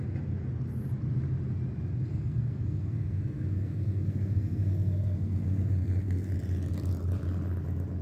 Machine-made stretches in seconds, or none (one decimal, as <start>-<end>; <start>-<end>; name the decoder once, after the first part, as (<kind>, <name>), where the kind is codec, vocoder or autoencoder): 2.1-6.3 (codec, SNAC)